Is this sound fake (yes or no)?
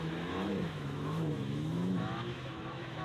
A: yes